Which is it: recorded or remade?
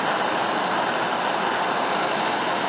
recorded